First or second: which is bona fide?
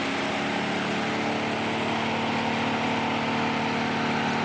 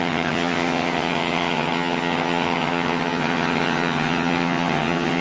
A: first